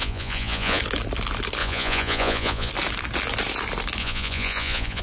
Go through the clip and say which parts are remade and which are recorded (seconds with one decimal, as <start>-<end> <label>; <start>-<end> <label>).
0.0-0.8 remade; 0.8-1.6 recorded; 1.6-2.7 remade; 2.7-4.0 recorded; 4.0-5.0 remade